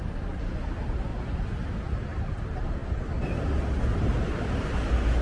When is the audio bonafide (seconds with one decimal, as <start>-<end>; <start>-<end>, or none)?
0.0-5.2